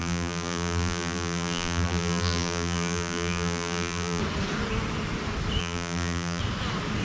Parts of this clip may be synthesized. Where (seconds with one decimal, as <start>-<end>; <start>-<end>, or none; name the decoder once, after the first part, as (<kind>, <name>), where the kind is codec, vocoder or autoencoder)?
0.0-4.2 (vocoder, BigVGAN v2); 5.6-6.4